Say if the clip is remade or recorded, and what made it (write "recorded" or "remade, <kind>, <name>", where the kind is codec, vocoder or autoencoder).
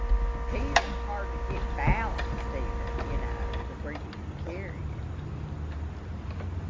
recorded